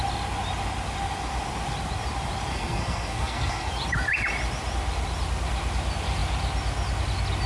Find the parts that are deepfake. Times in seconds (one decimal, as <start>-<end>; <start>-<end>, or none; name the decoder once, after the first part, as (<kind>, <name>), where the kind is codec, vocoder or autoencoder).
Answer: 2.5-3.7 (codec, SNAC)